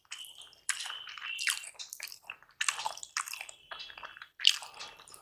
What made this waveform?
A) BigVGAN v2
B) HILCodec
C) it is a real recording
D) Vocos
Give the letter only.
A